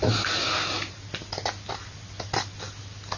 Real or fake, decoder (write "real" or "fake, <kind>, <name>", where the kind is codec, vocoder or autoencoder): real